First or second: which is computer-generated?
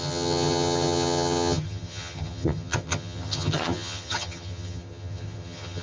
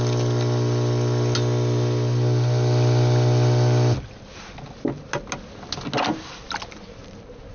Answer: first